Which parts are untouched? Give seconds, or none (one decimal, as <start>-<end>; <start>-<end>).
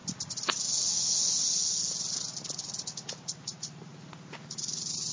0.0-5.1